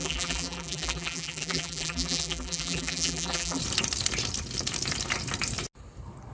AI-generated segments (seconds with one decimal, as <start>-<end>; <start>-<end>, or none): 0.0-3.6